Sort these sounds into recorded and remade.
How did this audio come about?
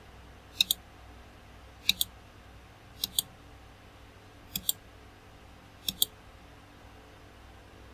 recorded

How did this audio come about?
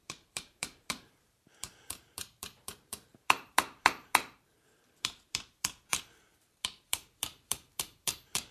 remade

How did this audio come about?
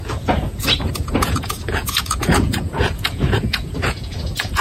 remade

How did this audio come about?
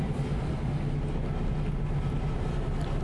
recorded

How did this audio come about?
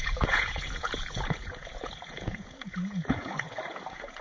remade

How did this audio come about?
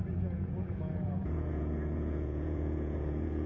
remade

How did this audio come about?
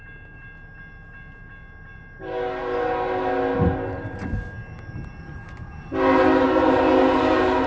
recorded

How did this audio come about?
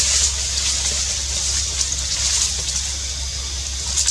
recorded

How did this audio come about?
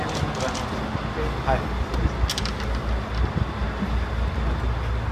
recorded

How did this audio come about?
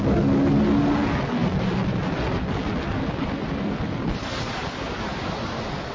recorded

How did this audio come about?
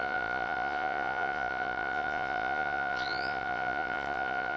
remade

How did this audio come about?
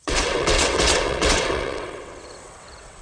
remade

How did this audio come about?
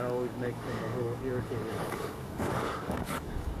remade